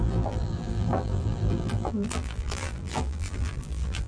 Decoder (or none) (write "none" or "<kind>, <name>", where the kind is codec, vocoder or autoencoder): vocoder, BigVGAN v2